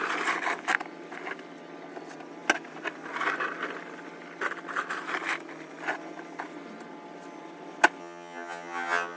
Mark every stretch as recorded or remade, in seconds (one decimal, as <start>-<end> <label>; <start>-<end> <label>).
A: 0.0-8.0 recorded; 8.0-9.2 remade